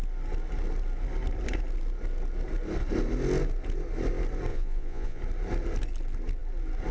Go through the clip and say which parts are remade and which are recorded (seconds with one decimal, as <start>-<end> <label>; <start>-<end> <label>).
0.0-4.5 recorded; 4.5-5.2 remade; 5.2-6.9 recorded